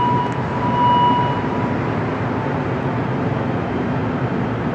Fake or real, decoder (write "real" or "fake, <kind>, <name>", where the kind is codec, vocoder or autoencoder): real